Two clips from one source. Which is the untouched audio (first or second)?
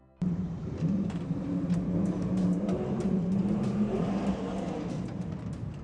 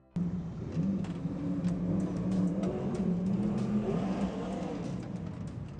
second